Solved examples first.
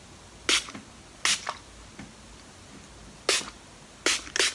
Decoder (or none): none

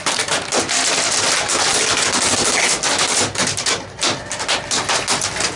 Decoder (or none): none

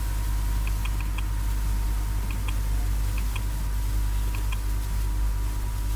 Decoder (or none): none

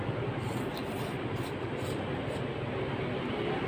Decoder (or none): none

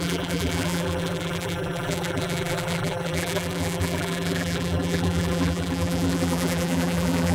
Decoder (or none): vocoder, BigVGAN v2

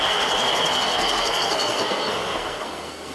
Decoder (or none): codec, SNAC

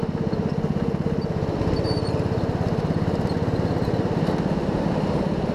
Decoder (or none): none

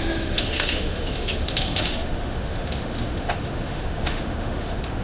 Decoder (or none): autoencoder, DAC-VAE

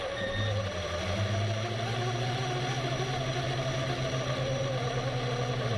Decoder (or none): none